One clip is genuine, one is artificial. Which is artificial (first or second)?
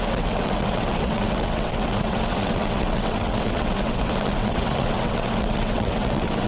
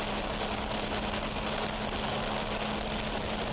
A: first